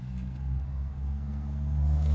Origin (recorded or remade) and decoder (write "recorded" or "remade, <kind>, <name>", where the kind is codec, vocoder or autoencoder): remade, codec, SNAC